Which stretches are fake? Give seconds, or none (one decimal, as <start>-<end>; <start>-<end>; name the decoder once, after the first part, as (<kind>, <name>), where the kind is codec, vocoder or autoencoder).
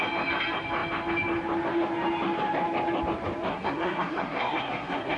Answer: 3.5-5.2 (codec, SNAC)